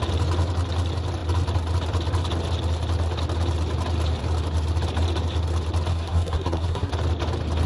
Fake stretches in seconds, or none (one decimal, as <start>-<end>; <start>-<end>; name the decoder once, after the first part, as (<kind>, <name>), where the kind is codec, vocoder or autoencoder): 5.9-6.9 (codec, SNAC)

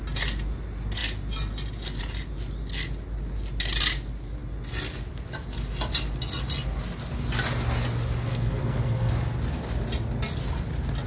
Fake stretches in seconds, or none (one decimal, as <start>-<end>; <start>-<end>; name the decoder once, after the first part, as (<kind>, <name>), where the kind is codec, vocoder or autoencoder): 8.3-9.1 (codec, SNAC)